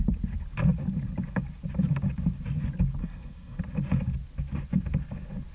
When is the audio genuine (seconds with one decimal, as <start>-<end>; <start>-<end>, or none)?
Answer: 0.0-3.0; 3.6-5.5